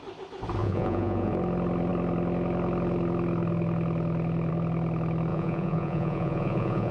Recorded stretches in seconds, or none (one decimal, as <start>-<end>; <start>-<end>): 0.0-0.6; 1.3-5.3